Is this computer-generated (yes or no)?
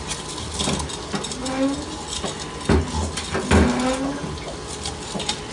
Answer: no